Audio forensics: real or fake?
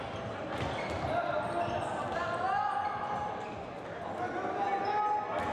real